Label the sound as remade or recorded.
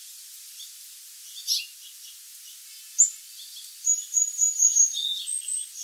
recorded